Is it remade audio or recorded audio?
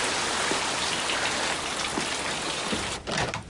recorded